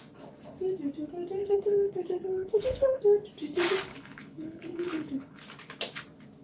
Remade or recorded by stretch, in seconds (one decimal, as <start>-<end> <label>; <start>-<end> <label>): 0.0-1.4 recorded; 1.4-3.0 remade; 3.0-3.9 recorded; 3.9-5.4 remade; 5.4-6.4 recorded